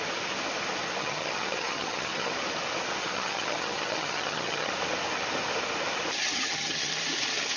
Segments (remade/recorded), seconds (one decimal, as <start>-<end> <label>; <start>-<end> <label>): 0.0-1.0 recorded; 1.0-2.3 remade; 2.3-3.0 recorded; 3.0-4.7 remade; 4.7-6.2 recorded; 6.2-6.9 remade; 6.9-7.6 recorded